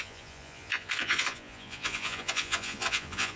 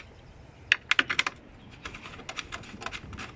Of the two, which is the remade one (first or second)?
first